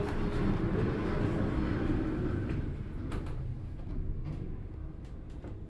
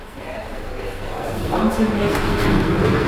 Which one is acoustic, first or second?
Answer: first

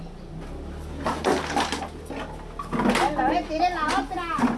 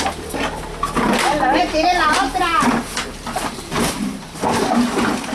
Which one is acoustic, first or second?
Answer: first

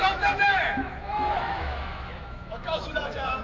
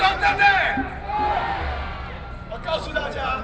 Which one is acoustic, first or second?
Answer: second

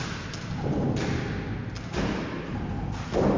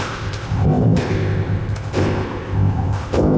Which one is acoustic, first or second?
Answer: first